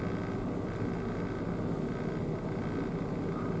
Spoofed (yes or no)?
no